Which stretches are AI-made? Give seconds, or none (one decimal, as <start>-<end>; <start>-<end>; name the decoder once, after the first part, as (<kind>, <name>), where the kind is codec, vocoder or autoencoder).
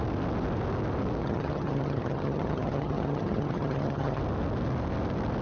1.2-4.2 (vocoder, HiFi-GAN)